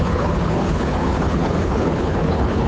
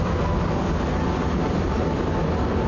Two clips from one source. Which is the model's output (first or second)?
first